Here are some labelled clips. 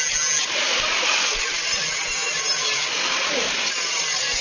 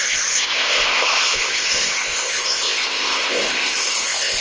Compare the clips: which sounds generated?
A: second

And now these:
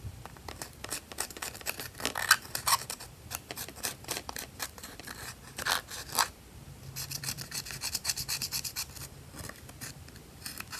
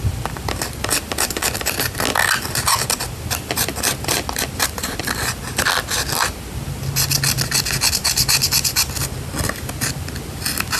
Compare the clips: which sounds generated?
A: first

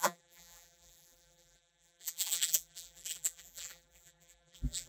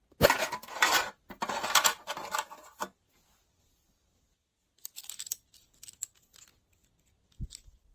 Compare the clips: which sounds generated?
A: first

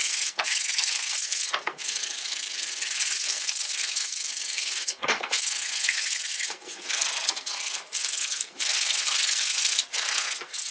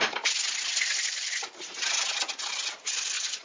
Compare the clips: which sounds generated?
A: first